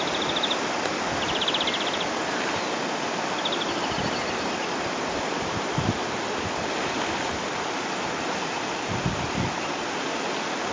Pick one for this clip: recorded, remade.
recorded